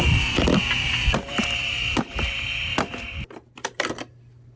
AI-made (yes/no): yes